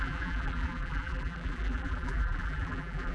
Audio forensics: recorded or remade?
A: remade